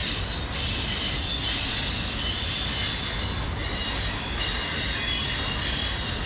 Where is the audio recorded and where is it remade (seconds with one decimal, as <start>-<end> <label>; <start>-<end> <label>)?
0.0-6.3 recorded